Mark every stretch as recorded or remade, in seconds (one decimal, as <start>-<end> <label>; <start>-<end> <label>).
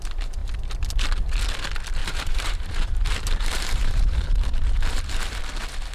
0.0-2.0 recorded; 2.0-5.4 remade; 5.4-5.9 recorded